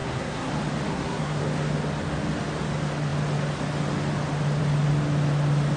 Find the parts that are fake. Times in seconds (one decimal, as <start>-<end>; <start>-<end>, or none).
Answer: 0.0-0.5; 0.9-1.4